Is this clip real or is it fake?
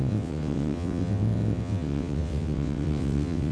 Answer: fake